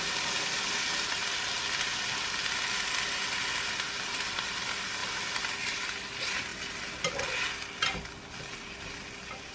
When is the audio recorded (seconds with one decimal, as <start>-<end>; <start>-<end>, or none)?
0.0-9.5